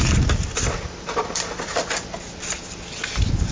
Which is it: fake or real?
real